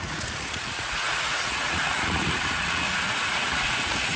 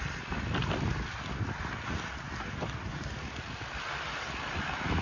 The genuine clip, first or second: second